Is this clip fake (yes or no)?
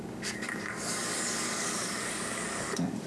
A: yes